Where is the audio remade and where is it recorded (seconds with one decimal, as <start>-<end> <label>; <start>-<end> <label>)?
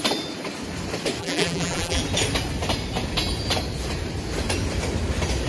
0.0-1.2 recorded; 1.2-2.0 remade; 2.0-5.5 recorded